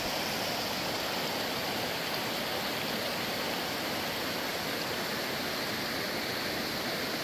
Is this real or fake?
real